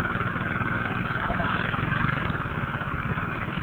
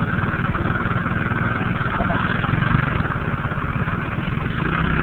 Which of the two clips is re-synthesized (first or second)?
first